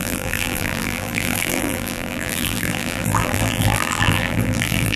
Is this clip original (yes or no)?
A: no